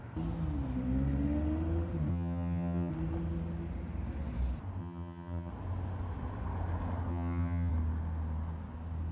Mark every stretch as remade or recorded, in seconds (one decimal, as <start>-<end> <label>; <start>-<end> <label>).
0.0-2.1 recorded; 2.1-2.9 remade; 2.9-4.8 recorded; 4.8-5.5 remade; 5.5-7.1 recorded; 7.1-7.7 remade; 7.7-9.1 recorded